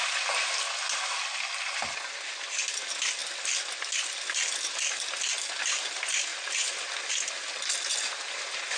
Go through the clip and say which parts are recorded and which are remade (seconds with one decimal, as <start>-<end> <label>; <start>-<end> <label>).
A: 0.0-8.8 recorded